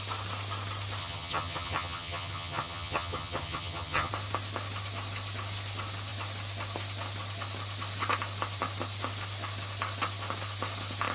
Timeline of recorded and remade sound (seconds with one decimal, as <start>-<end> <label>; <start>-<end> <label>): 0.0-1.0 recorded; 1.0-4.1 remade; 4.1-11.1 recorded